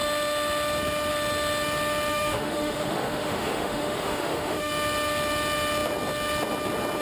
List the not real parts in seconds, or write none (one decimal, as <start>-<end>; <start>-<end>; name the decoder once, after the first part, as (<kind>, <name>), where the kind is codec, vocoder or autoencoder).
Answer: 2.1-4.7 (autoencoder, DAC-VAE)